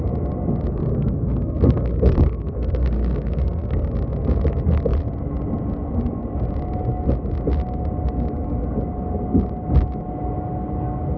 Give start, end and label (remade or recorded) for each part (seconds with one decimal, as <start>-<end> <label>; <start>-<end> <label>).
0.0-0.8 recorded; 0.8-3.9 remade; 3.9-11.2 recorded

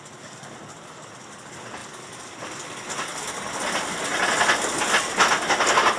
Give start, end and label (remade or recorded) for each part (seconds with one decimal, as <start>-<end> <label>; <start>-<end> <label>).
0.0-6.0 recorded

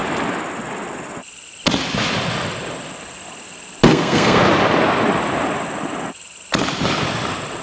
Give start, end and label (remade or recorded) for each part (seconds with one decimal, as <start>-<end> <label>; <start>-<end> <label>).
0.0-3.9 recorded; 3.9-4.4 remade; 4.4-7.6 recorded